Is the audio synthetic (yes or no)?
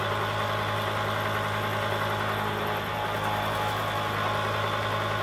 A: no